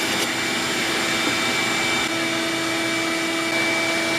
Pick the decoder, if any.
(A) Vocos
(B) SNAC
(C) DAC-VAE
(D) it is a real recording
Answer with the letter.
D